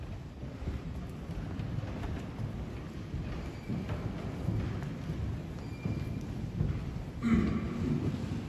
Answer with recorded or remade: recorded